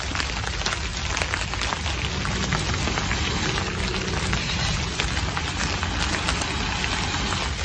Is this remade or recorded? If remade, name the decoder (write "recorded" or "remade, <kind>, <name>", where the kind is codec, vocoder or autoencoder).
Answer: recorded